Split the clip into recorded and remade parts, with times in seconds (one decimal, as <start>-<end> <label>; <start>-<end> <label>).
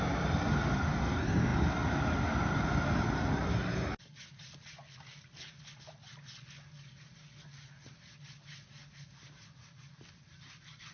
0.0-10.9 recorded